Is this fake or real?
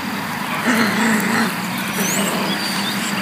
real